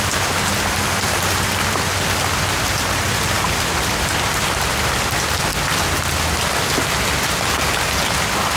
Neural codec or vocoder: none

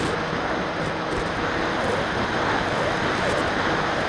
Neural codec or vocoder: none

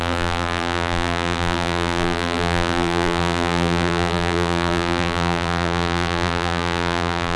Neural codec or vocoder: vocoder, BigVGAN v2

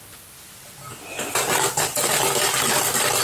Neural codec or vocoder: none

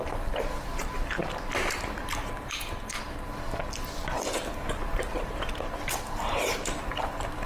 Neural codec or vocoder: vocoder, BigVGAN v2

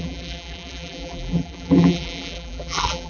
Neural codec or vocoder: vocoder, BigVGAN v2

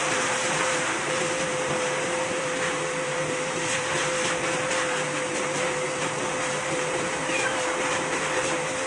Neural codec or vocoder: vocoder, BigVGAN v2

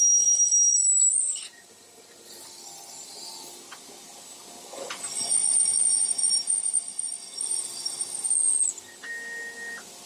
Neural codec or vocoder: none